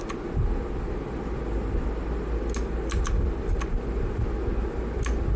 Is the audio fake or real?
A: real